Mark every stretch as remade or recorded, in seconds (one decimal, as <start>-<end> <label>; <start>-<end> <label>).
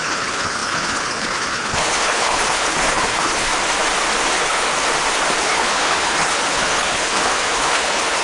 0.0-3.5 remade; 3.5-4.3 recorded; 4.3-4.7 remade; 4.7-5.4 recorded; 5.4-8.2 remade